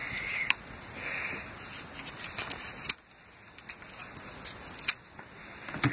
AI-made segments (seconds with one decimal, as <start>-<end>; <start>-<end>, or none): none